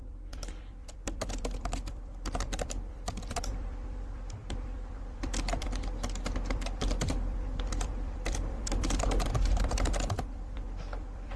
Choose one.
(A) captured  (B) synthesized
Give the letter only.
B